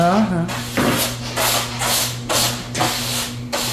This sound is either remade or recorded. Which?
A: recorded